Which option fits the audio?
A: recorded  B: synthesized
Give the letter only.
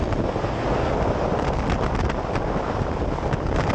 A